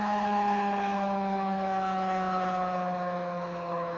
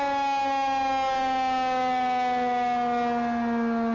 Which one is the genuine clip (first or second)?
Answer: second